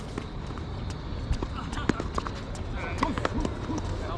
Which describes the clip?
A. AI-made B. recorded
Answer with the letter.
B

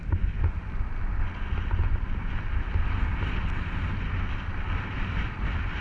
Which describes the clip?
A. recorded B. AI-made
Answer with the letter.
A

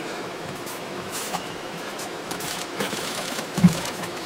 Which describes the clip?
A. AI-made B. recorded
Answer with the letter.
A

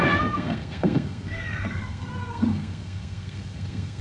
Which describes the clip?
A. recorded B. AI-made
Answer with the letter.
B